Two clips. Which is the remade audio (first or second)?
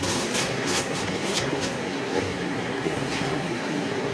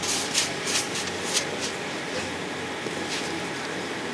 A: first